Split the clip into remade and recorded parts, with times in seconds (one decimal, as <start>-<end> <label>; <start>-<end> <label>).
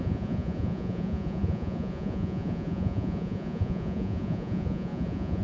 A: 0.0-5.4 remade